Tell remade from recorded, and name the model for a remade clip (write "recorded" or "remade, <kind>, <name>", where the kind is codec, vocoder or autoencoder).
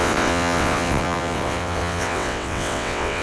remade, vocoder, WaveNeXt